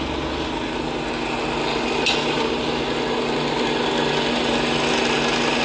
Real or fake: real